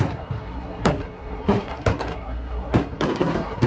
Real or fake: fake